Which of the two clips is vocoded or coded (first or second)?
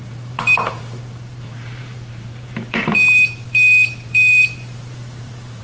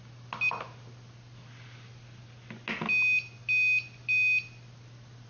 first